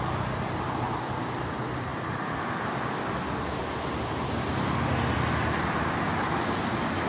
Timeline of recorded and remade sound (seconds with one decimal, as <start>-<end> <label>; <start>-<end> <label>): 0.0-7.1 recorded